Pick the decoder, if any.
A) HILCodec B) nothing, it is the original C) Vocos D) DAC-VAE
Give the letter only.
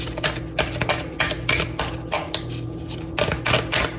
B